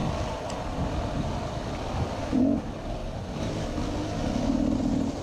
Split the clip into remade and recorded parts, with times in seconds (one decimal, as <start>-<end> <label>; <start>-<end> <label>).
0.0-5.2 recorded